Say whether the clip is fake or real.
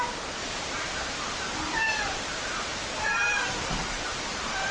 fake